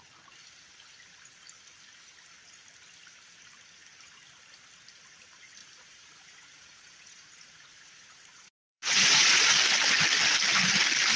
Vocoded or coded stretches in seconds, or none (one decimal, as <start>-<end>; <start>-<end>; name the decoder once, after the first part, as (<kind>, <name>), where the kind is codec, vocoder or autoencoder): 5.6-9.4 (vocoder, Vocos)